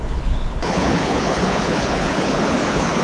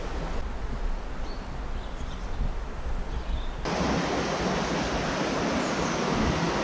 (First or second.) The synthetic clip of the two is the first